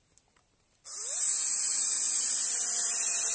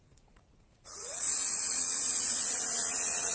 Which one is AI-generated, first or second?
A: second